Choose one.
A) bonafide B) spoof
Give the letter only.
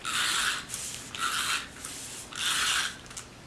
A